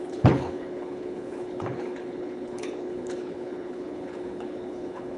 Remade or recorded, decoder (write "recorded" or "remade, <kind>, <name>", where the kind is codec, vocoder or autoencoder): remade, codec, HILCodec